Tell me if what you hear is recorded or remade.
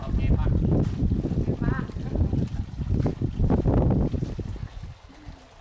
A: recorded